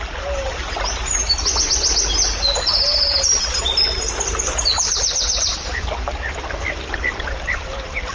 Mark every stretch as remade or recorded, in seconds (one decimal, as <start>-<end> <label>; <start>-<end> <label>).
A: 0.0-8.1 recorded